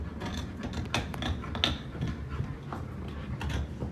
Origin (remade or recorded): recorded